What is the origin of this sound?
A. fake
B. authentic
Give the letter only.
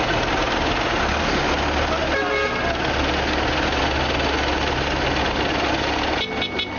B